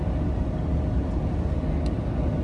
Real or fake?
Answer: real